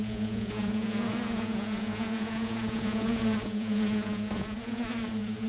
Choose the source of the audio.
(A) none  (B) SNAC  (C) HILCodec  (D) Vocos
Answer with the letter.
D